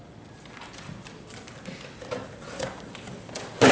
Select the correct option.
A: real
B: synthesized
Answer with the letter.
A